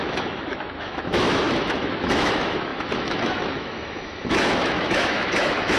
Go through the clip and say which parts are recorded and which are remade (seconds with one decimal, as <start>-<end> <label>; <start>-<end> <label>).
0.0-5.8 remade